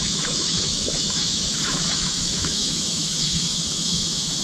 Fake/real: fake